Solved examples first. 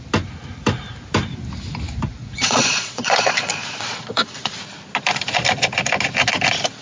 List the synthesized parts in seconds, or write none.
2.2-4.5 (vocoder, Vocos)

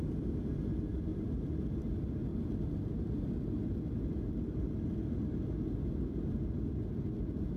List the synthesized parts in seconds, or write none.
2.3-4.7 (vocoder, BigVGAN v2)

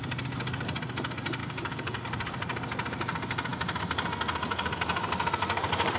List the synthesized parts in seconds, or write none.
1.4-2.0 (codec, DAC)

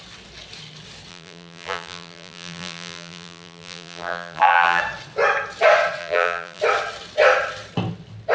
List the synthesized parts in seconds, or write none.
1.1-4.8 (vocoder, BigVGAN v2); 6.0-6.6

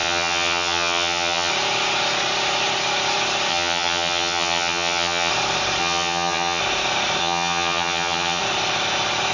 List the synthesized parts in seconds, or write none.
0.0-1.5 (vocoder, HiFi-GAN); 3.5-5.3; 5.8-6.6; 7.2-8.4

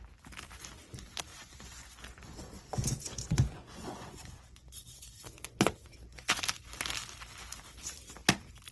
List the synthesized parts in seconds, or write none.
1.3-6.4 (vocoder, Vocos)